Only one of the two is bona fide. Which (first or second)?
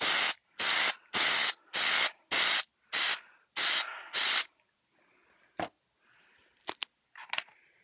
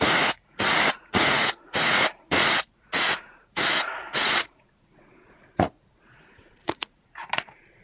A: first